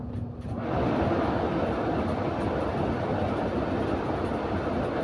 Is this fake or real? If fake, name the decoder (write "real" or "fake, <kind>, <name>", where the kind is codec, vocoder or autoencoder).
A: real